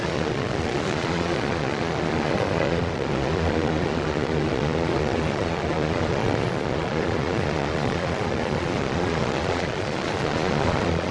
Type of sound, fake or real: fake